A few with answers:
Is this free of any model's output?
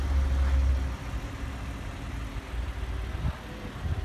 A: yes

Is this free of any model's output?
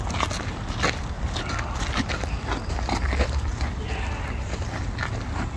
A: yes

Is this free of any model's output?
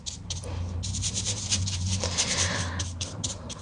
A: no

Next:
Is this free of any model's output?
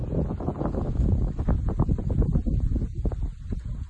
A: yes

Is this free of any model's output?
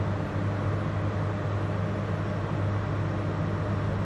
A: yes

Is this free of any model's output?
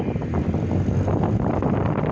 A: yes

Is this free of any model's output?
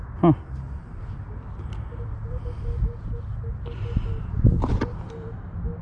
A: yes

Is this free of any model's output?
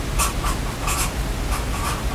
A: yes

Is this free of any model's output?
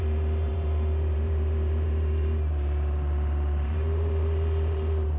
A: no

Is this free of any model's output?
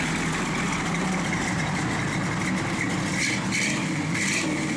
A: yes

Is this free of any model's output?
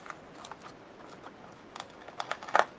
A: yes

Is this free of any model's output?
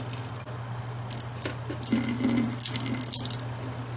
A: yes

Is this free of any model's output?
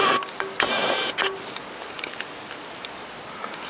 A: yes